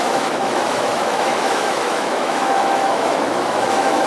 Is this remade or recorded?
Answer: remade